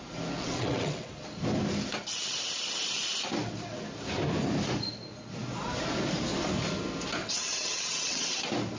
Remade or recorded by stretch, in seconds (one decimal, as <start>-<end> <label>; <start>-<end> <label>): 0.0-0.4 recorded; 0.4-1.1 remade; 1.1-7.2 recorded; 7.2-8.4 remade; 8.4-8.8 recorded